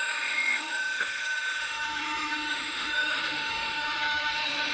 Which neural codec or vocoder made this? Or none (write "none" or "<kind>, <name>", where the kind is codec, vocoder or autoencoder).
autoencoder, DAC-VAE